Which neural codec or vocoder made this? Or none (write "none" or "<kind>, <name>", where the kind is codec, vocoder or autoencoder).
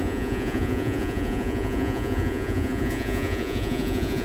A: vocoder, Vocos